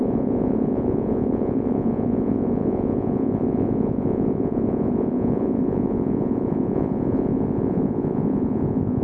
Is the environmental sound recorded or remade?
remade